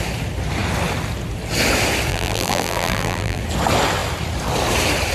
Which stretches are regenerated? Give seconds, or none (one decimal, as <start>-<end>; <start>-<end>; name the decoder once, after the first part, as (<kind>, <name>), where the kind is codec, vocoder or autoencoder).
2.1-3.4 (vocoder, BigVGAN v2)